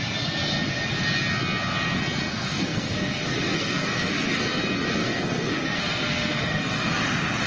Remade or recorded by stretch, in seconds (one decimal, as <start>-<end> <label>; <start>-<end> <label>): 0.0-2.3 recorded; 2.3-4.6 remade; 4.6-5.0 recorded; 5.0-7.0 remade; 7.0-7.5 recorded